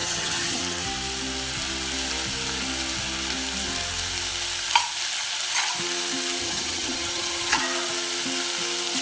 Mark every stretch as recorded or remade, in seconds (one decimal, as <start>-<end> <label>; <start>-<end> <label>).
0.0-0.6 remade; 0.6-6.4 recorded; 6.4-7.6 remade; 7.6-9.0 recorded